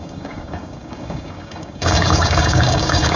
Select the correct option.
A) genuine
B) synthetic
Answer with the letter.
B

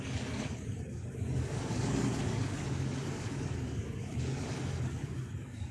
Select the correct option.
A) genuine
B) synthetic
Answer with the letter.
B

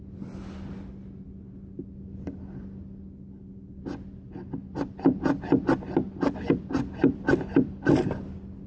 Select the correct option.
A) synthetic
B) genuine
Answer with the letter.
B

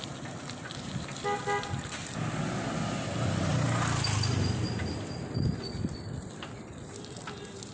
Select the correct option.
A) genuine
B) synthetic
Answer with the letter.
A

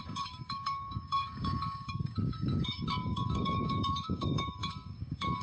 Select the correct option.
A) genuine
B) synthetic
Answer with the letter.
B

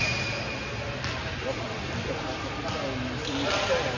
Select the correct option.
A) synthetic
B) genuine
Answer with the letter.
B